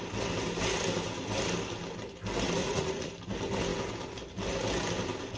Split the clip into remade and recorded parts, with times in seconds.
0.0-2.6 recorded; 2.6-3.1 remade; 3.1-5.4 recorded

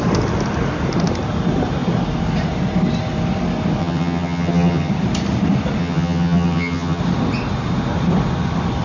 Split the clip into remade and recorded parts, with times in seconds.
0.0-3.8 recorded; 3.8-4.9 remade; 4.9-5.8 recorded; 5.8-7.0 remade; 7.0-8.8 recorded

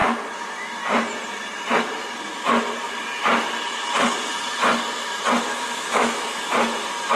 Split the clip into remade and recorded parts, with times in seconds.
0.0-5.5 recorded; 5.5-6.5 remade; 6.5-7.2 recorded